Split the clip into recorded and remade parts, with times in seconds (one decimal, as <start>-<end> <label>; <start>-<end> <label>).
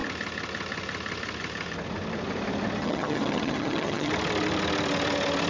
0.0-2.8 recorded; 2.8-4.1 remade; 4.1-5.5 recorded